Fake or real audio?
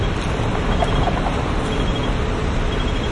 real